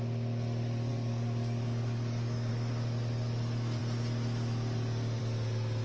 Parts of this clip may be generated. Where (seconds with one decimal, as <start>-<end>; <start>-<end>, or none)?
0.9-2.5